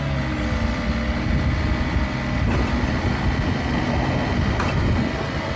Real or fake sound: real